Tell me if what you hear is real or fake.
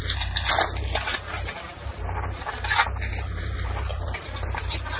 real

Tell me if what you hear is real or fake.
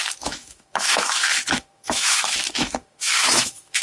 fake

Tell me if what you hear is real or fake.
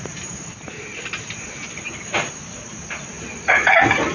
real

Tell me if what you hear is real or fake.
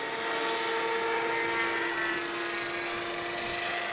real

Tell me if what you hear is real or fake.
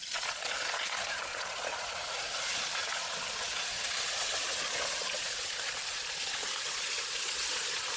fake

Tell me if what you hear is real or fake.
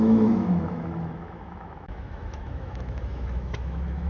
fake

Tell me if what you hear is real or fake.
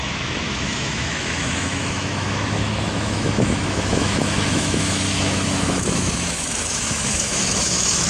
fake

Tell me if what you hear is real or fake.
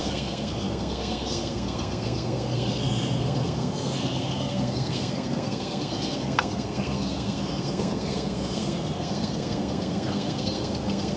fake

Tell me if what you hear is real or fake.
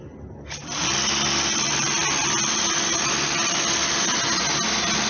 real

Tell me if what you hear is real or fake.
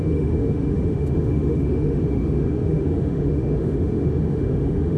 fake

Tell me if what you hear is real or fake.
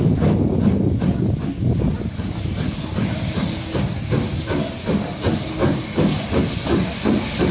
real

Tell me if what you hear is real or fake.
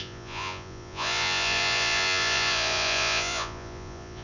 fake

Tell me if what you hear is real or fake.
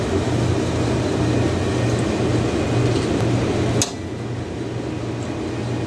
real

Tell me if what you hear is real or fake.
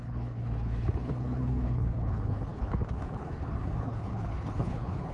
fake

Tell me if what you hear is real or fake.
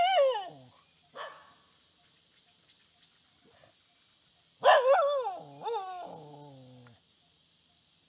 real